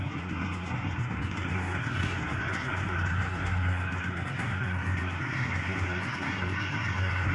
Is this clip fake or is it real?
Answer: fake